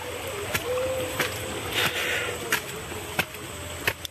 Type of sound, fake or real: real